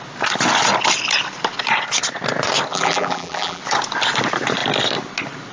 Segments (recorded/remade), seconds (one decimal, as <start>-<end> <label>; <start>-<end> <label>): 0.0-2.7 recorded; 2.7-3.6 remade; 3.6-5.5 recorded